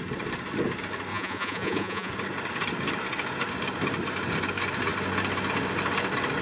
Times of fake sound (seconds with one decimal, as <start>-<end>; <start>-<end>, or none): 1.1-2.1